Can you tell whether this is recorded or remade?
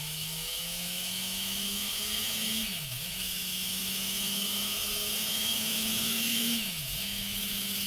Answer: remade